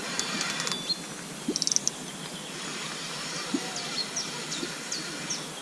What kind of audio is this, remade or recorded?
recorded